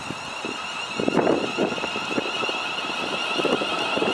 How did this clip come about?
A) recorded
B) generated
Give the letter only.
A